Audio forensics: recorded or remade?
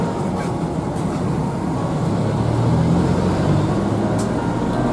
recorded